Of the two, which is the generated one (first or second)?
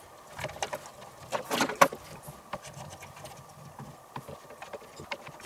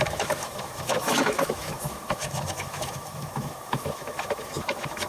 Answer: second